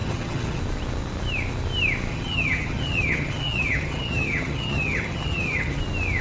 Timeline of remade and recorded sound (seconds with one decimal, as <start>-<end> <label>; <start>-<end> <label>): 0.0-0.6 remade; 0.6-2.1 recorded; 2.1-5.8 remade; 5.8-6.2 recorded

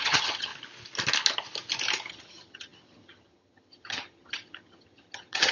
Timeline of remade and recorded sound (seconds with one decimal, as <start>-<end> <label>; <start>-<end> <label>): 0.0-0.5 remade; 0.5-2.1 recorded; 2.1-5.5 remade

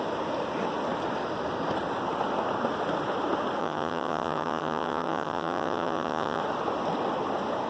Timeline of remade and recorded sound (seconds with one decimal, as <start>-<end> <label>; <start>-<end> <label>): 0.0-3.6 recorded; 3.6-6.4 remade; 6.4-7.7 recorded

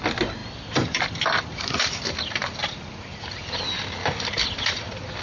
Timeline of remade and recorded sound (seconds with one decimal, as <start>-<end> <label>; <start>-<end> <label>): 0.0-5.2 recorded

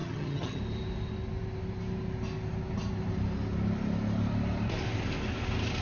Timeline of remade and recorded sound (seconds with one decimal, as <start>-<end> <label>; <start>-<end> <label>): 0.0-0.6 remade; 0.6-5.8 recorded

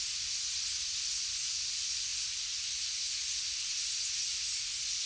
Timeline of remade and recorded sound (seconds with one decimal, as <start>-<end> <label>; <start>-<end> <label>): 0.0-5.1 recorded

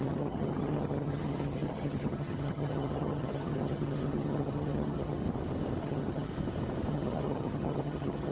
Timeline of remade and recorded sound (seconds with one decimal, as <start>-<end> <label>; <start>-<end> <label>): 0.0-5.2 remade; 5.2-5.8 recorded; 5.8-6.3 remade; 6.3-6.9 recorded; 6.9-8.3 remade

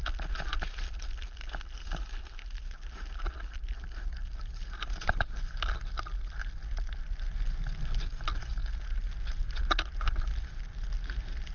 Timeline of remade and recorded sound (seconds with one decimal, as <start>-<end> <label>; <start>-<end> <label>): 0.0-11.5 recorded